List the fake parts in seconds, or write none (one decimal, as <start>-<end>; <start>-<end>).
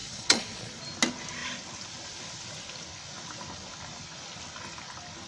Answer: 0.0-0.8